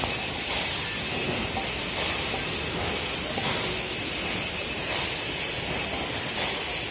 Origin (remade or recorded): recorded